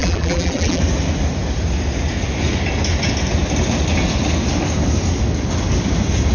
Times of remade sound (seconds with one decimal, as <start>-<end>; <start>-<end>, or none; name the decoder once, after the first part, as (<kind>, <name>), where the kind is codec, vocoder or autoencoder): 0.0-0.8 (vocoder, BigVGAN v2)